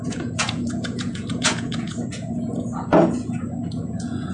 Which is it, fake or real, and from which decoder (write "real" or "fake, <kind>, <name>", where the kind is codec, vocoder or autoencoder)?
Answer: fake, vocoder, Vocos